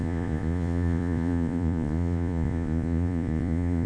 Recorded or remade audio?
remade